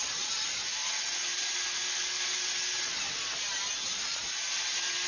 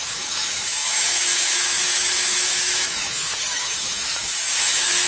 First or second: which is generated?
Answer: second